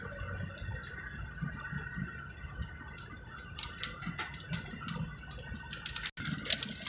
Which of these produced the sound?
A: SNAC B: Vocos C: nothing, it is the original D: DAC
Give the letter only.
C